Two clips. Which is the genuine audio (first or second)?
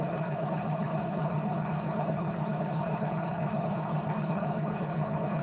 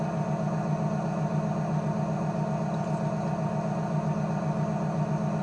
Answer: second